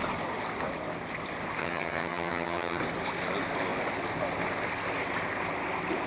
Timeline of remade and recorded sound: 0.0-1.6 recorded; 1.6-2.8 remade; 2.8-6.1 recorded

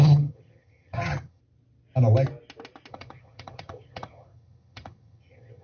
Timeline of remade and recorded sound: 0.0-1.4 remade; 1.4-2.9 recorded; 2.9-5.6 remade

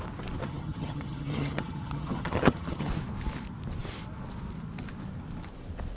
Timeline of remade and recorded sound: 0.0-0.4 recorded; 0.4-2.9 remade; 2.9-6.0 recorded